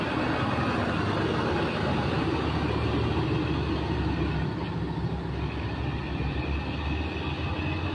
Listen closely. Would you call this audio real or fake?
real